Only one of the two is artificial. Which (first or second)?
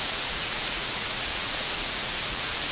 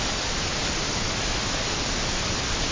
first